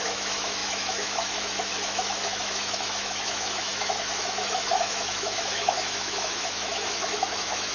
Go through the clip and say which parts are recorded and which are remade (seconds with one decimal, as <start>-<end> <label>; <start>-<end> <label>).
0.0-7.7 remade